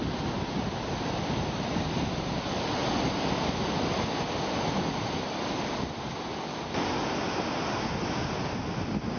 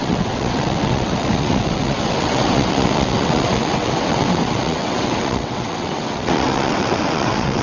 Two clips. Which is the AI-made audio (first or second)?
second